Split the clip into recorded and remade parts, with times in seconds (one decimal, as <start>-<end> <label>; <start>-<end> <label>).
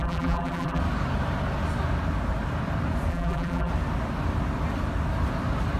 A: 0.0-0.8 remade; 0.8-3.1 recorded; 3.1-3.7 remade; 3.7-5.8 recorded